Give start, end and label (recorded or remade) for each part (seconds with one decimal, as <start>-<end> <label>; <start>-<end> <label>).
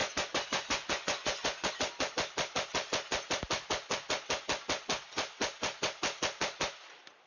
0.0-1.7 remade; 1.7-7.3 recorded